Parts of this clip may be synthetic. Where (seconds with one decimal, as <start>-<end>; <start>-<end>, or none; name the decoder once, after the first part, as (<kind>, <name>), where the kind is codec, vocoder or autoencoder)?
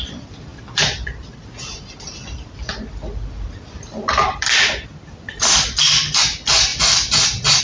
none